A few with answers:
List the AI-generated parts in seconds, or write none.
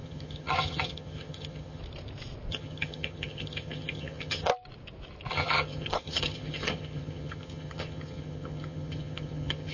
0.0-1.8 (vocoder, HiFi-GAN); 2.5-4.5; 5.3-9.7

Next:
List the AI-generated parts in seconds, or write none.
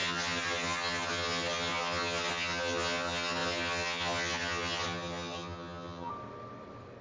0.0-6.1 (vocoder, HiFi-GAN)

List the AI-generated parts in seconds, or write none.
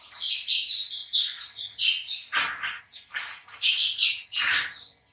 none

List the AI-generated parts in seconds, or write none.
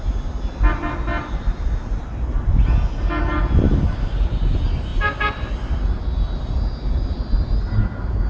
none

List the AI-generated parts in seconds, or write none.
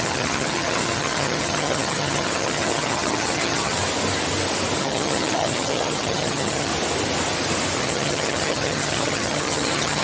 0.0-3.8 (vocoder, HiFi-GAN); 4.8-6.7; 7.8-10.0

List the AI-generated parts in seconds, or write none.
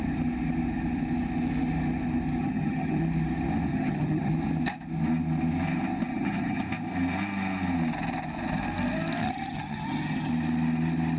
2.4-3.0 (vocoder, HiFi-GAN); 3.7-4.3; 6.1-6.6; 9.2-10.3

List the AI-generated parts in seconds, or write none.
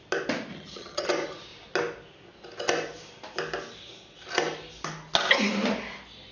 0.5-1.1 (vocoder, HiFi-GAN)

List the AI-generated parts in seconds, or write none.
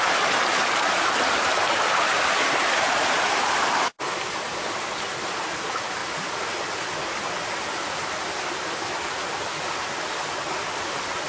none